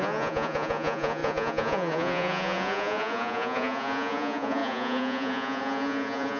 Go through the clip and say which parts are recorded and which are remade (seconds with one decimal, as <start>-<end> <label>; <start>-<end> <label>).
0.0-6.4 remade